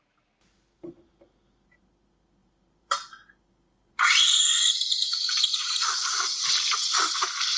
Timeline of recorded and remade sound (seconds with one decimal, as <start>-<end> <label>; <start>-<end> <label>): 0.0-2.4 recorded; 2.4-6.5 remade; 6.5-7.6 recorded